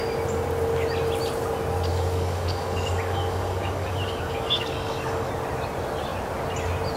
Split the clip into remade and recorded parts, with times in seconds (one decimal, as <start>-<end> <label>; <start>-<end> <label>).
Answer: 0.0-1.9 recorded; 1.9-5.3 remade; 5.3-7.0 recorded

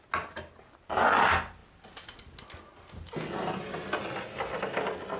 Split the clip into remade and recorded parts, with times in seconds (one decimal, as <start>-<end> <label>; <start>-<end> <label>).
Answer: 0.0-5.2 recorded

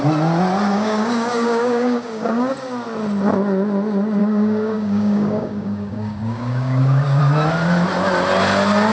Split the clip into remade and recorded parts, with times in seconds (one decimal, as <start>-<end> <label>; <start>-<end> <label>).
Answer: 0.0-0.7 recorded; 0.7-2.5 remade; 2.5-4.2 recorded; 4.2-7.2 remade; 7.2-8.9 recorded

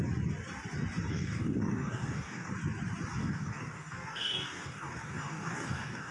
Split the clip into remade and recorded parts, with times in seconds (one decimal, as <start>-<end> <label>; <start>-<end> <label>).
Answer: 0.0-1.1 recorded; 1.1-2.5 remade; 2.5-3.2 recorded; 3.2-6.1 remade

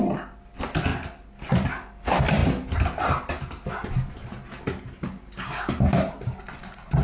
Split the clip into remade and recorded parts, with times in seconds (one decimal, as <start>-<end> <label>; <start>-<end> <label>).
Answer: 0.0-7.0 recorded

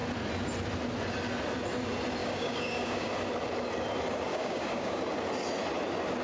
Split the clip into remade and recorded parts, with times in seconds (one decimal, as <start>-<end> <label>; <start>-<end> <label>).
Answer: 0.0-2.2 recorded; 2.2-3.1 remade; 3.1-4.3 recorded; 4.3-5.0 remade; 5.0-6.2 recorded

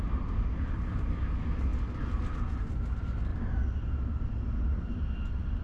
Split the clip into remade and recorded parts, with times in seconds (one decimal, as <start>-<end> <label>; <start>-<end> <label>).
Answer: 0.0-5.6 recorded